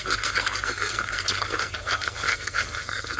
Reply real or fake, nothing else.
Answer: fake